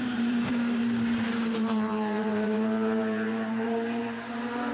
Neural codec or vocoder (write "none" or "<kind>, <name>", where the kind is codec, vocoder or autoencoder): vocoder, BigVGAN v2